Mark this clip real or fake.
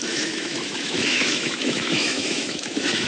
fake